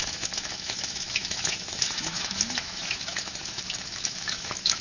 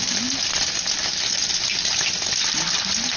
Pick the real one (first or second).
second